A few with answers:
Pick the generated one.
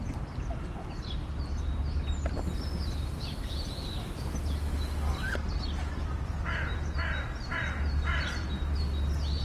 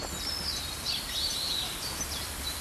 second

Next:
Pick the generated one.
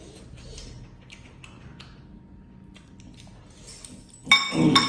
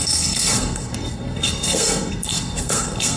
second